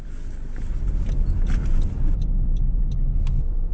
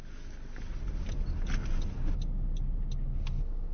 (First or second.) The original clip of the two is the second